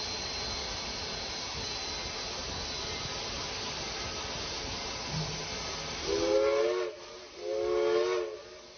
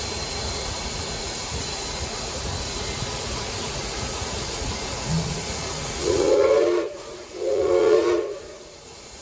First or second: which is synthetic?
second